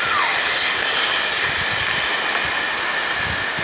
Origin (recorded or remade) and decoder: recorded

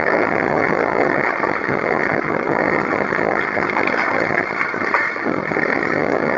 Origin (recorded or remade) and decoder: remade, vocoder, HiFi-GAN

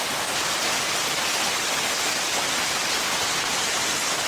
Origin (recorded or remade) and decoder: recorded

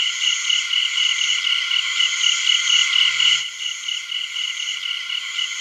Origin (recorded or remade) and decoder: recorded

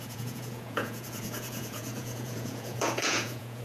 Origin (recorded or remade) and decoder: remade, vocoder, Vocos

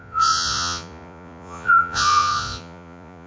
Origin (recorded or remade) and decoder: remade, vocoder, Vocos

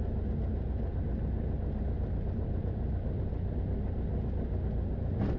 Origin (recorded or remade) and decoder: recorded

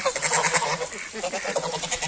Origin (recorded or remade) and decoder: recorded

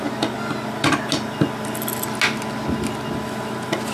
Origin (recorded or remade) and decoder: recorded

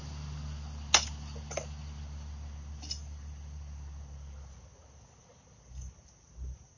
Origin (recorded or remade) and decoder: recorded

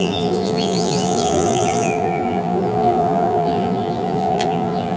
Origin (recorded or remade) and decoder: remade, vocoder, BigVGAN v2